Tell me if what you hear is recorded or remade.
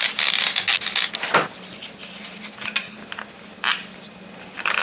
recorded